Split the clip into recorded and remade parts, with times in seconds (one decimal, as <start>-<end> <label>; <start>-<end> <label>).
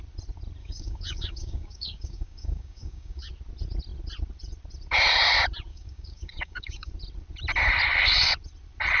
0.0-0.6 recorded; 0.6-3.3 remade; 3.3-5.7 recorded; 5.7-6.9 remade; 6.9-9.0 recorded